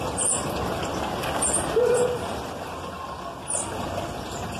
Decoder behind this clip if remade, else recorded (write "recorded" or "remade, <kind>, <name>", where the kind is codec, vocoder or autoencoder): recorded